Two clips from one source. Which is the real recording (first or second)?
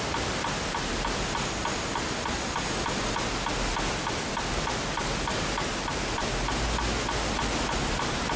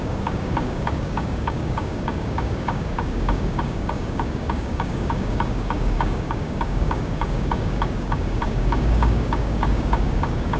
first